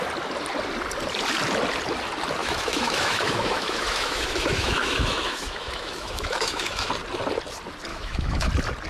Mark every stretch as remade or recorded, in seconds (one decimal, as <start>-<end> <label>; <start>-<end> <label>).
0.0-2.4 recorded; 2.4-6.9 remade; 6.9-7.9 recorded; 7.9-8.5 remade; 8.5-8.9 recorded